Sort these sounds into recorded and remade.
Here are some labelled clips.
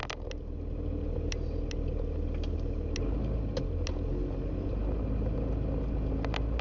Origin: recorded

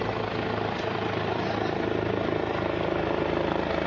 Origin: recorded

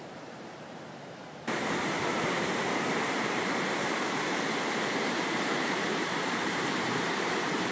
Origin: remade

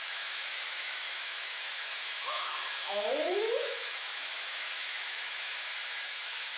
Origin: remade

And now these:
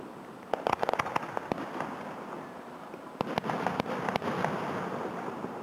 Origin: recorded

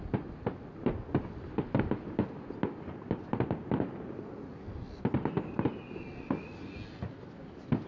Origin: recorded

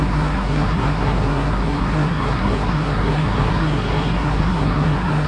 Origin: remade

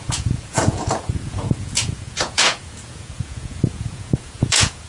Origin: remade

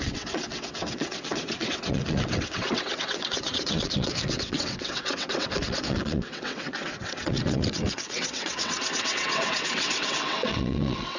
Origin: remade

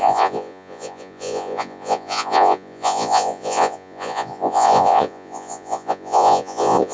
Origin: remade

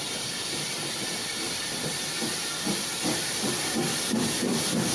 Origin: remade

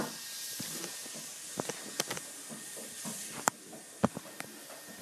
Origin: recorded